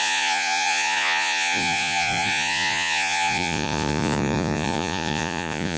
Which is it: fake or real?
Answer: fake